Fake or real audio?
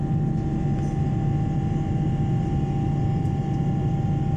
real